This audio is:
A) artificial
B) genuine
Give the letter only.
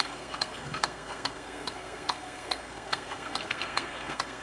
A